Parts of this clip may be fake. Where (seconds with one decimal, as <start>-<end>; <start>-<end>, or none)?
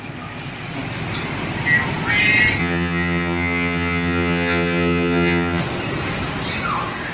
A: 2.6-5.6